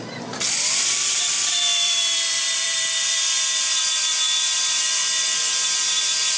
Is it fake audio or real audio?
fake